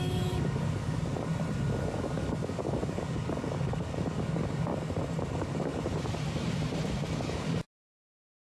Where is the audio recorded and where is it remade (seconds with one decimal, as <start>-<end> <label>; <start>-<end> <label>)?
0.0-1.3 remade; 1.3-1.8 recorded; 1.8-4.7 remade; 4.7-5.2 recorded; 5.2-5.7 remade; 5.7-7.1 recorded; 7.1-8.5 remade